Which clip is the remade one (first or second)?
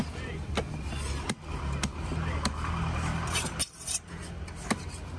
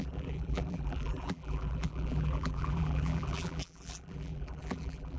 second